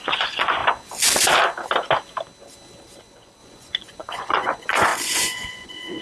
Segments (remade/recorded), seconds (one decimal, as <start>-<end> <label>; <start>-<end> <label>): 0.0-0.6 remade; 0.6-3.0 recorded; 3.0-6.0 remade